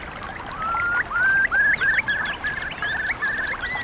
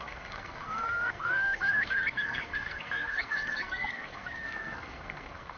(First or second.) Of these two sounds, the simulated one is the second